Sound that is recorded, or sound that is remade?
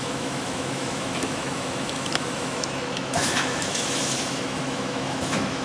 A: remade